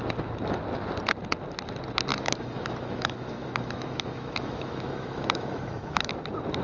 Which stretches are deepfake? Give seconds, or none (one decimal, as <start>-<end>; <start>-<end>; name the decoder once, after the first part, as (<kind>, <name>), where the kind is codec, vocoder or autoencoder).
2.1-6.1 (autoencoder, DAC-VAE)